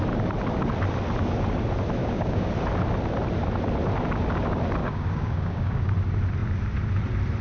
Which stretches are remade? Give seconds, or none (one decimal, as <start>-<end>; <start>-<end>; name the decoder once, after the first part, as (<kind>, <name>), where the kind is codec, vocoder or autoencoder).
2.0-2.5 (codec, DAC); 4.8-5.9